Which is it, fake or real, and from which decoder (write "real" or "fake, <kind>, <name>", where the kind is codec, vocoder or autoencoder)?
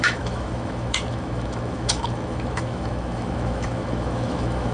fake, autoencoder, DAC-VAE